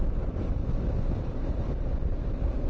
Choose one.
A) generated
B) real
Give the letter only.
B